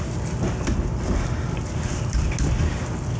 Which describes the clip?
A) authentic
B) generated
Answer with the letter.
A